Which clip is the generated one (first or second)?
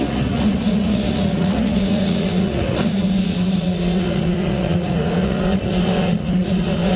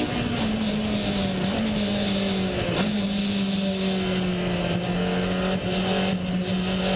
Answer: first